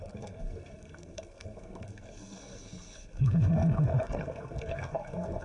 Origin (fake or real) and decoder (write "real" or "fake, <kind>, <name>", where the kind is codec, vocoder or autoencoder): fake, codec, SNAC